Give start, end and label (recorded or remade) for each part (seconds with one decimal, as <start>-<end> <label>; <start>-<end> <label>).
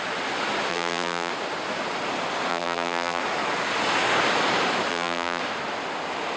0.0-0.7 recorded; 0.7-1.3 remade; 1.3-2.5 recorded; 2.5-3.2 remade; 3.2-4.9 recorded; 4.9-5.4 remade; 5.4-6.4 recorded